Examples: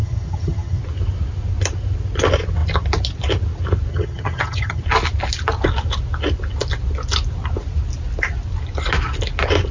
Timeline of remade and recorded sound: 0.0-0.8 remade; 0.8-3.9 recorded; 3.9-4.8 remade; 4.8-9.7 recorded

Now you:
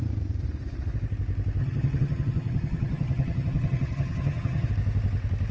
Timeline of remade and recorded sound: 0.0-1.6 recorded; 1.6-4.7 remade; 4.7-5.5 recorded

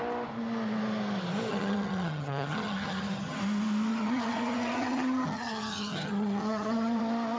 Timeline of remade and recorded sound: 0.0-1.5 recorded; 1.5-3.4 remade; 3.4-3.9 recorded; 3.9-7.0 remade; 7.0-7.4 recorded